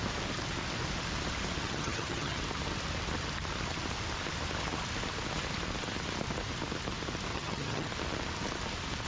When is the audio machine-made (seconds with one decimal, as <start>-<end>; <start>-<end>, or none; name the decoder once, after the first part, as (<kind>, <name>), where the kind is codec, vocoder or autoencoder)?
1.6-2.4 (vocoder, HiFi-GAN); 7.3-7.9